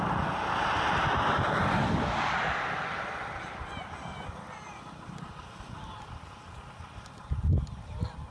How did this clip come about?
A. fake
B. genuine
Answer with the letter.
B